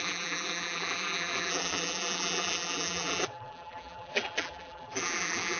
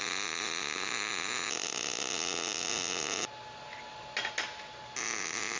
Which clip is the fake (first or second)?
first